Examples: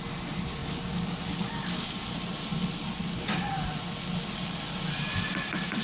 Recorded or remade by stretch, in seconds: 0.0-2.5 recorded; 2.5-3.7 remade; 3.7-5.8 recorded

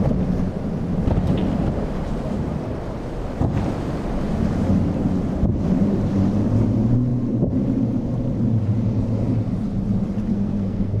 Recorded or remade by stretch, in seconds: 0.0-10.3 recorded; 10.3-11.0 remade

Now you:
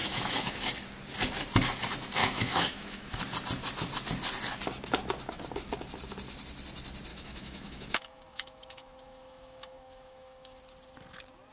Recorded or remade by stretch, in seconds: 0.0-0.7 remade; 0.7-2.2 recorded; 2.2-3.2 remade; 3.2-7.1 recorded; 7.1-10.6 remade; 10.6-11.5 recorded

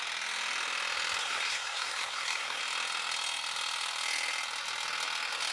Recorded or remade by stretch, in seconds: 0.0-1.2 recorded; 1.2-2.6 remade; 2.6-5.5 recorded

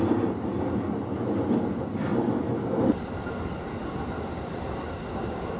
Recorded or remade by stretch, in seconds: 0.0-5.6 recorded

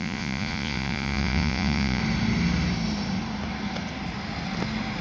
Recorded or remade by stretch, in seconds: 0.0-2.0 remade; 2.0-5.0 recorded